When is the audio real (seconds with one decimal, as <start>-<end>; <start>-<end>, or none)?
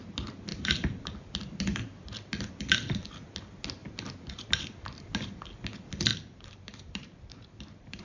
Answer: 0.0-6.1